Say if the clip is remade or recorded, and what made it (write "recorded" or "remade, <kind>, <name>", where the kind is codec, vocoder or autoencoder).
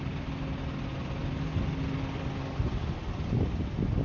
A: recorded